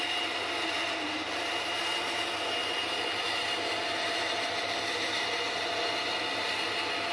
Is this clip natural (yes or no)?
yes